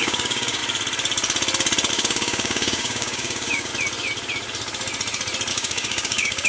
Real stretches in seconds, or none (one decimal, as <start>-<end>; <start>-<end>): 0.6-1.9; 3.7-5.5